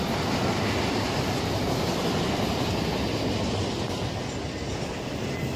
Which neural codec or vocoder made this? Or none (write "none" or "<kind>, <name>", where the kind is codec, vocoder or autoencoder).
none